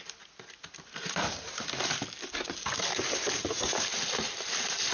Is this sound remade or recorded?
recorded